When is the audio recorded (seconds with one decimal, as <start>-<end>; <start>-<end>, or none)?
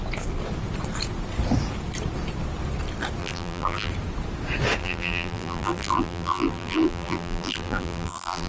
0.0-3.2; 3.9-4.8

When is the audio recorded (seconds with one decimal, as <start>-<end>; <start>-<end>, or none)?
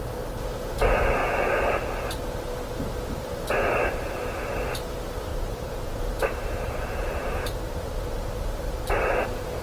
0.0-5.3; 9.2-9.6